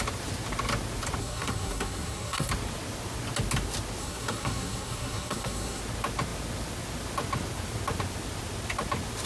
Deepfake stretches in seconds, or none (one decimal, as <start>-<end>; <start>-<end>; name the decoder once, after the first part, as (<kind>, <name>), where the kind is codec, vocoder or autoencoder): 1.2-2.5 (codec, SNAC); 4.0-5.8